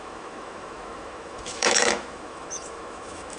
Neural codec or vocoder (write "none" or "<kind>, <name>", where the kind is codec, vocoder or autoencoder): autoencoder, DAC-VAE